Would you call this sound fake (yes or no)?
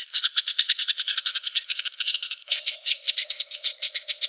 yes